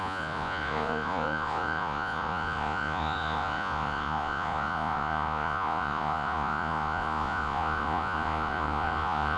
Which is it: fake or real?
fake